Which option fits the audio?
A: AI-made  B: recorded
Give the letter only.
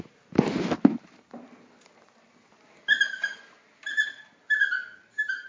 B